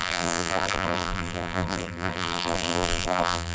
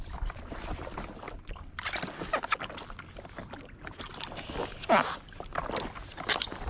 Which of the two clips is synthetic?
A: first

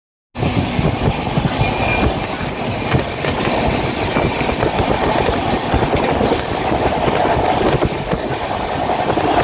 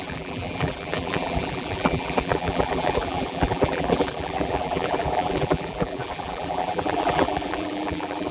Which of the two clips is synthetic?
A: second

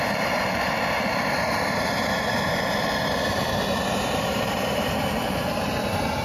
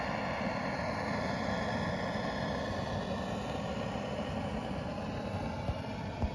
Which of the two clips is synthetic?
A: first